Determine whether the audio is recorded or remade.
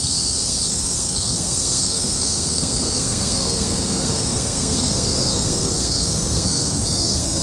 remade